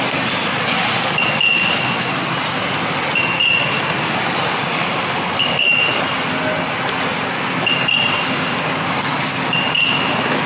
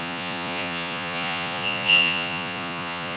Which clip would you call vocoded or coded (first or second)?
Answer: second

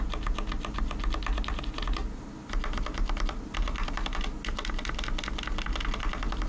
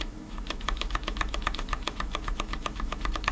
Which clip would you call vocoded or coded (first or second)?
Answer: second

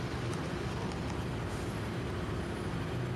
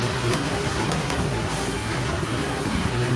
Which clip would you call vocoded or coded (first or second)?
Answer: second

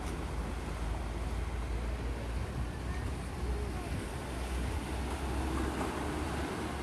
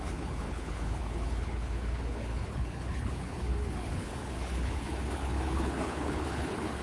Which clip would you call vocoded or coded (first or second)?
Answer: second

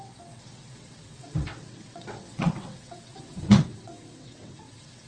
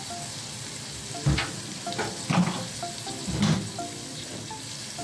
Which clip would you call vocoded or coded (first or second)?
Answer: first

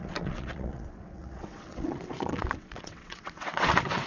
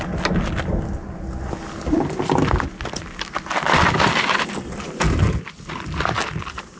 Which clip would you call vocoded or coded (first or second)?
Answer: first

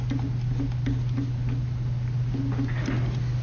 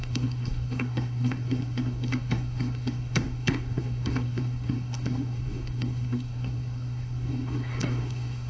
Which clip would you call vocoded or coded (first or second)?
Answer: second